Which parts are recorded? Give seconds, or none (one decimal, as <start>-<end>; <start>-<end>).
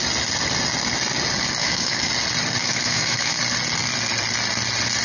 0.0-1.6; 2.1-2.6; 3.4-5.0